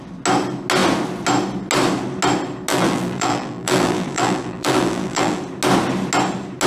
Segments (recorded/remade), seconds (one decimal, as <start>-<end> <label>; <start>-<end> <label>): 0.0-2.7 recorded; 2.7-5.4 remade; 5.4-6.7 recorded

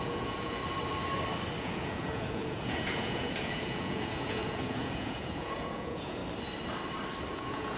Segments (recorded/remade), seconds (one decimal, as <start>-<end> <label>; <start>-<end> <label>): 0.0-0.6 remade; 0.6-1.6 recorded; 1.6-6.2 remade; 6.2-7.3 recorded; 7.3-7.8 remade

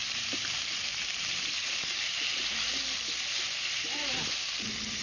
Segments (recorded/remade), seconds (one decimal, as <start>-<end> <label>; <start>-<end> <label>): 0.0-3.0 remade; 3.0-5.0 recorded